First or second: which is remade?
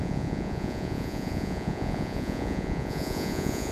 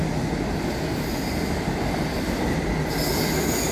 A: first